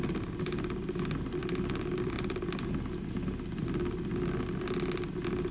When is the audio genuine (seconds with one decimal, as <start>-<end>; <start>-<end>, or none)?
0.0-5.5

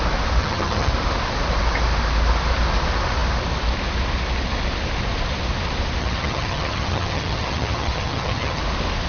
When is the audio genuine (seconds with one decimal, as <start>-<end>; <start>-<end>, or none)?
0.0-0.4; 0.9-6.0; 8.6-9.1

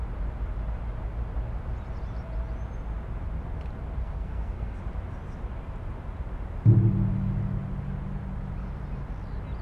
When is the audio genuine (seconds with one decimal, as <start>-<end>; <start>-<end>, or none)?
0.0-4.0; 4.8-9.6